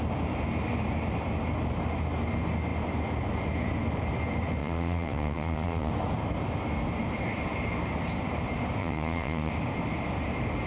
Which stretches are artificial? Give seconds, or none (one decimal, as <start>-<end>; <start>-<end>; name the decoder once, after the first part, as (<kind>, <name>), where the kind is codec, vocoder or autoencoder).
4.6-5.9 (vocoder, Vocos); 8.8-9.5